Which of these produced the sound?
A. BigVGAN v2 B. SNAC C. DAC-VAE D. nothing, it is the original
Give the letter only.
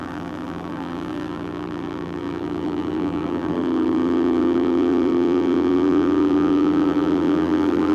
A